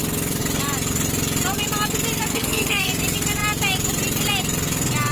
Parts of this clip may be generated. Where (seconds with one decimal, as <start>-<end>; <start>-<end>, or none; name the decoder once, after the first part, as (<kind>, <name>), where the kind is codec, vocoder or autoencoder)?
2.3-2.9 (codec, SNAC)